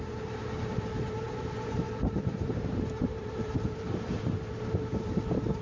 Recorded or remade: remade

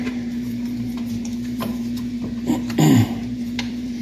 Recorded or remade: remade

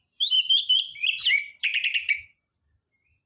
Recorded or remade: remade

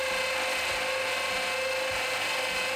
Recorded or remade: recorded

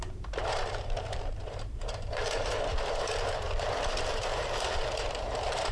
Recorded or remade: remade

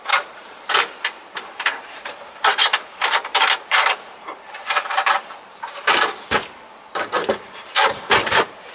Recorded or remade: remade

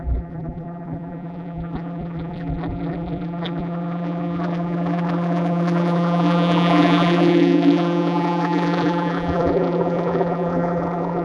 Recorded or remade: remade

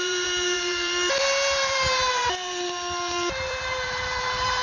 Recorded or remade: remade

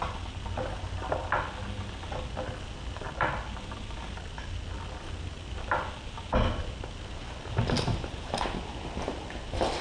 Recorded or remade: recorded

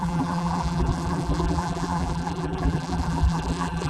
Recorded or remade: remade